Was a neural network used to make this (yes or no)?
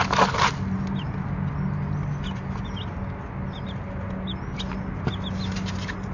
no